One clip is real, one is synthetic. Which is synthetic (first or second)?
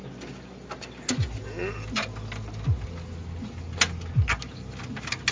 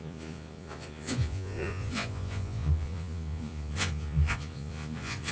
second